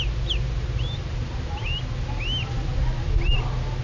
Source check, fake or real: real